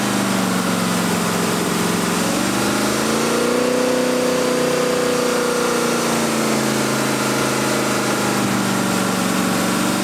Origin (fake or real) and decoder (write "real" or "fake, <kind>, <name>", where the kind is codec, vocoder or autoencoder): real